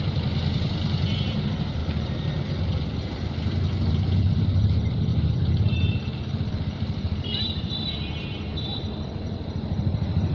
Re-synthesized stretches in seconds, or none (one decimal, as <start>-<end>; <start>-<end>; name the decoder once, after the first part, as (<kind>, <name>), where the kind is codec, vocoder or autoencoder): 0.0-1.8 (vocoder, BigVGAN v2); 4.2-10.3